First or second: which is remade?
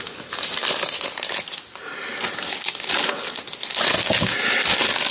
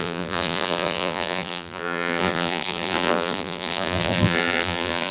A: second